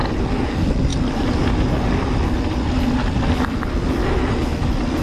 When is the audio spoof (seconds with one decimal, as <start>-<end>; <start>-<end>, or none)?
none